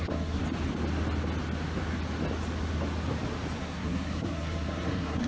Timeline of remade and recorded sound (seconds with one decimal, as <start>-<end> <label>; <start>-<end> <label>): 0.0-0.4 remade; 0.4-3.6 recorded; 3.6-5.3 remade